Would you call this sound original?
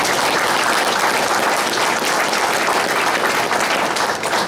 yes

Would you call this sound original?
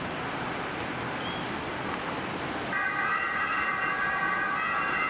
no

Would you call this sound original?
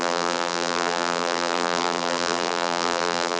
no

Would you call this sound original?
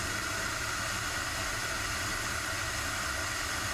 yes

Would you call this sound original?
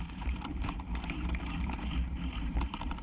no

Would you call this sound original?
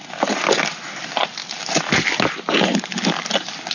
no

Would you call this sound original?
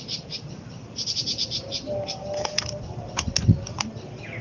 yes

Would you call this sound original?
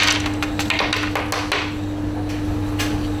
yes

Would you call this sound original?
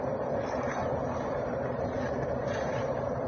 no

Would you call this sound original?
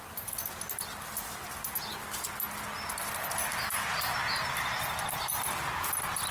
yes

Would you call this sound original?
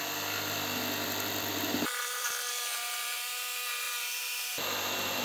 no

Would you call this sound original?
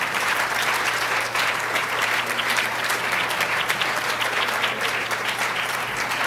no